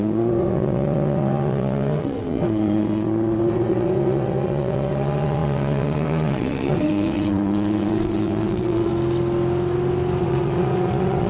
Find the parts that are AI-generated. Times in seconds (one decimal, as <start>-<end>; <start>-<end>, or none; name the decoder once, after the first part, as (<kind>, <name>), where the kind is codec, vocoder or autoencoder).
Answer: 0.0-8.9 (vocoder, WaveNeXt); 10.2-11.3